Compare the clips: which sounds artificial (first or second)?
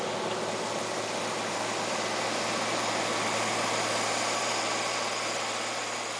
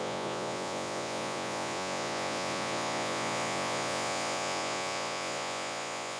second